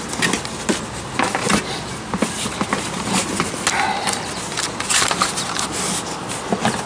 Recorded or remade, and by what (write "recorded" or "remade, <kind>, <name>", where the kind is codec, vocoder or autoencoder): recorded